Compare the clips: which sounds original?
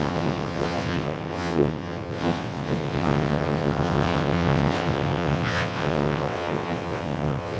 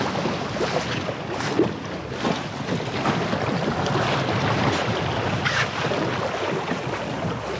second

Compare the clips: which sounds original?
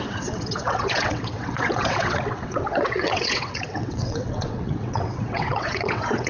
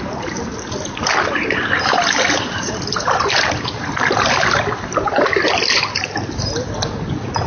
second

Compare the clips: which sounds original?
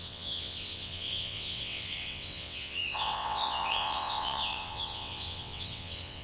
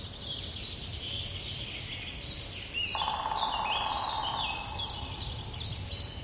second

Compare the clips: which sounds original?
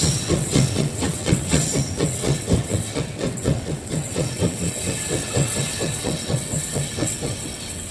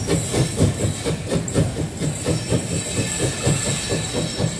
second